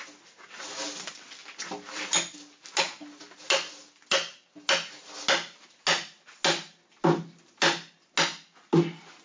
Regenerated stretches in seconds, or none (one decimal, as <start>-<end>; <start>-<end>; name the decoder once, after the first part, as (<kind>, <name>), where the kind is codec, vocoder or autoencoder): none

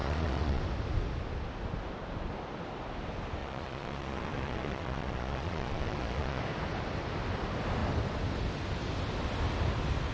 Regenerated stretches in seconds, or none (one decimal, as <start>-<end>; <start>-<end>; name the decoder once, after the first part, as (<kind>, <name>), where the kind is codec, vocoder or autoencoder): 0.0-0.6 (vocoder, Vocos); 3.4-6.4

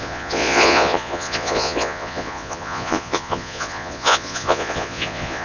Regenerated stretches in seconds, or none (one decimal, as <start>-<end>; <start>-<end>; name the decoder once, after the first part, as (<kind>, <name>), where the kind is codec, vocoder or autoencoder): 0.0-5.4 (vocoder, Vocos)